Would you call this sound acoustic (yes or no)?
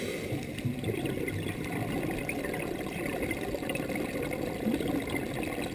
yes